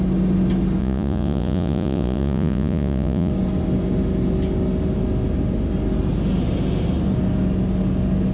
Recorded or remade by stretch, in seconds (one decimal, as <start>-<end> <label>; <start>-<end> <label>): 0.0-0.8 recorded; 0.8-3.3 remade; 3.3-8.3 recorded